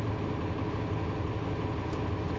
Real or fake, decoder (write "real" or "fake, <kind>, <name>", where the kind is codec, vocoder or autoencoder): real